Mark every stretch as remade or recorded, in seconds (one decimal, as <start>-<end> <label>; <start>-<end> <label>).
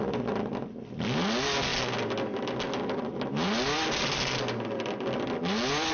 0.0-5.9 recorded